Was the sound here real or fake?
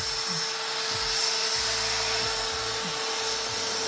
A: real